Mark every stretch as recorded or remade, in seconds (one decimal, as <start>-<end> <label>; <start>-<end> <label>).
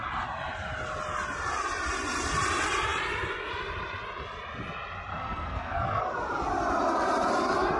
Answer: 0.0-5.1 recorded; 5.1-6.0 remade; 6.0-7.8 recorded